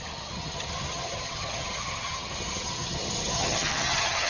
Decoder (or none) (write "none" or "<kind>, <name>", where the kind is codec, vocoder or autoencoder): vocoder, HiFi-GAN